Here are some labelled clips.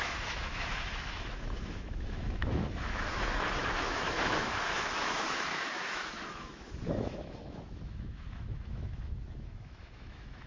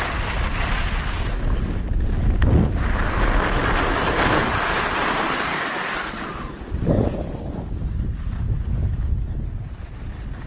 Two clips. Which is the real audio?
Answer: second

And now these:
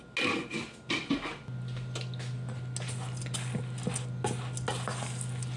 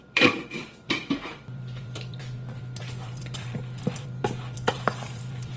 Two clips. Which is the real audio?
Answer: first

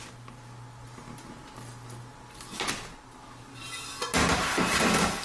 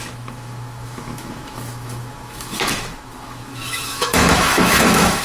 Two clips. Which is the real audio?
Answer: first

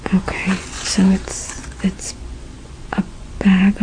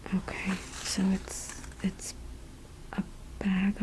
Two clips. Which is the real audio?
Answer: second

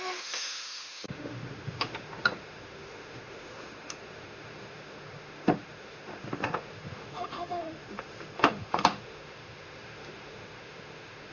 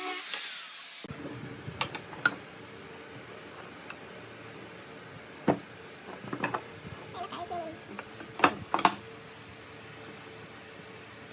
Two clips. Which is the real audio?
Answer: second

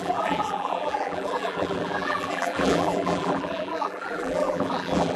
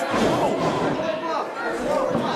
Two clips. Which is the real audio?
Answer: second